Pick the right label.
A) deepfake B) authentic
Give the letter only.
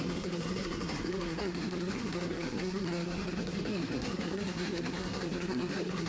A